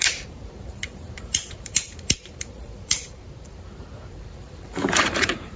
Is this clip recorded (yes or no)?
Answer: no